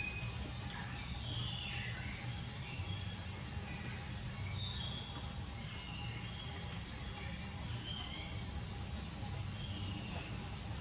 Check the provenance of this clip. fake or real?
real